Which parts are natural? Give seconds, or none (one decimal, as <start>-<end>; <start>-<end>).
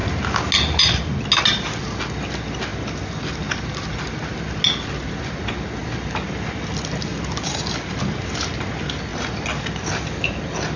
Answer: 0.0-10.8